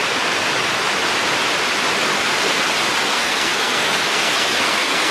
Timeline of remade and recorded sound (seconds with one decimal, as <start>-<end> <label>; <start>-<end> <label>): 0.0-3.1 recorded; 3.1-5.1 remade